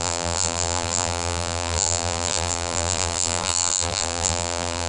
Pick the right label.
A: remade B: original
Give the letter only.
A